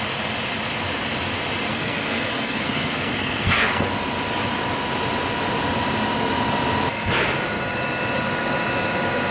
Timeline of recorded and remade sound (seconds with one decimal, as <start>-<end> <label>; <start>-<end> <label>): 0.0-1.7 recorded; 1.7-3.9 remade; 3.9-9.3 recorded